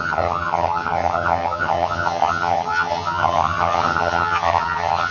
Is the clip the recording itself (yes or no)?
no